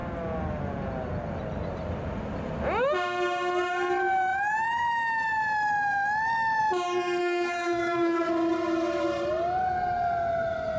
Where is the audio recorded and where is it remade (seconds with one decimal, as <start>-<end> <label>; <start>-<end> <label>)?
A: 0.0-7.2 recorded; 7.2-8.3 remade; 8.3-10.8 recorded